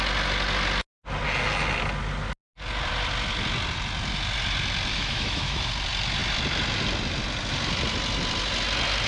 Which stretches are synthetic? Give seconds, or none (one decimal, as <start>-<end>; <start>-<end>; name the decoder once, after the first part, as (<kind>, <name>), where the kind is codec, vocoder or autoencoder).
4.9-5.7 (autoencoder, DAC-VAE)